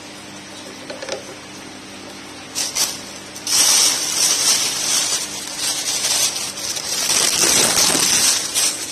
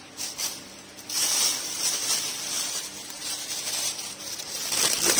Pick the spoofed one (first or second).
second